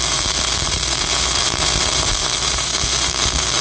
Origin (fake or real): fake